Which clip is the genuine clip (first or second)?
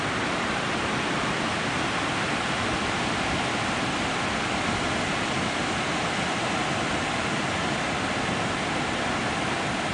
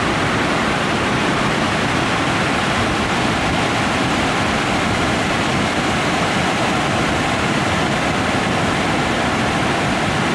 first